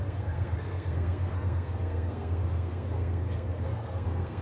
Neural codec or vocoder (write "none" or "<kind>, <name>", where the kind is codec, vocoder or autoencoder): codec, SNAC